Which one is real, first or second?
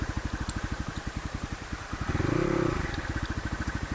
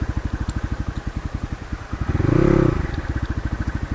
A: second